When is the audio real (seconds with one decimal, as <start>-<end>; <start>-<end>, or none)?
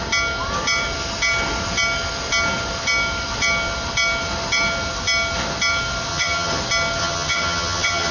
0.0-6.1; 6.6-7.0